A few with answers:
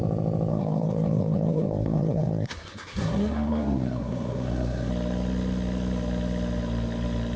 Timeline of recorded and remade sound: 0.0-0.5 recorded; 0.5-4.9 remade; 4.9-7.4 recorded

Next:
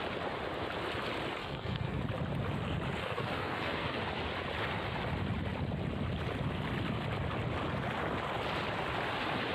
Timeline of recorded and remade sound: 0.0-1.4 recorded; 1.4-2.0 remade; 2.0-3.0 recorded; 3.0-4.0 remade; 4.0-9.5 recorded

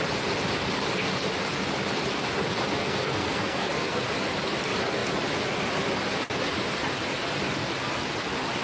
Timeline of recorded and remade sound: 0.0-2.8 recorded; 2.8-4.0 remade; 4.0-8.6 recorded

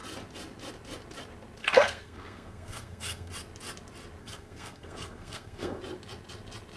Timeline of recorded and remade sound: 0.0-1.6 recorded; 1.6-3.3 remade; 3.3-4.2 recorded; 4.2-5.8 remade; 5.8-6.8 recorded

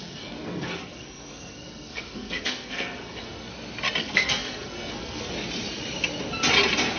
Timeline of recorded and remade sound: 0.0-3.5 remade; 3.5-4.0 recorded; 4.0-5.3 remade; 5.3-7.0 recorded